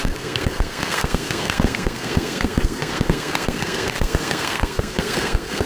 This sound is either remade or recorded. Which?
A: remade